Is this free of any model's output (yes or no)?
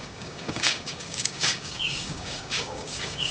no